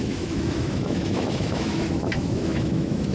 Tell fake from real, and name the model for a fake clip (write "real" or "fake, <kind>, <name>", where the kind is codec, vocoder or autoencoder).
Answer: fake, autoencoder, DAC-VAE